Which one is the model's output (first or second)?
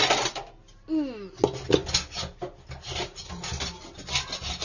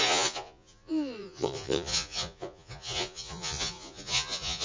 second